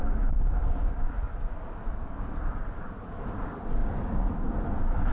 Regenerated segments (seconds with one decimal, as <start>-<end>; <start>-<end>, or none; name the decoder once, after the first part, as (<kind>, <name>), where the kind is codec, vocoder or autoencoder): none